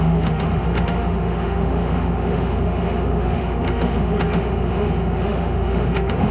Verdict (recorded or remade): remade